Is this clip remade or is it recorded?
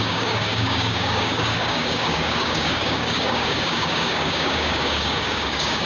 remade